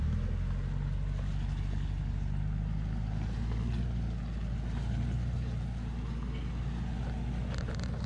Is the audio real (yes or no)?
yes